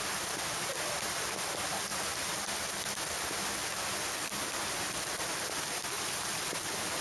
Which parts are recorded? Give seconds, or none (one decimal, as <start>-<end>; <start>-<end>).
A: 0.0-7.0